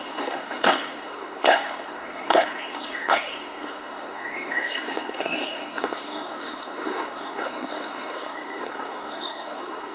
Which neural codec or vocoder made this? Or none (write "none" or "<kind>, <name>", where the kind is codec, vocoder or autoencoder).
codec, SNAC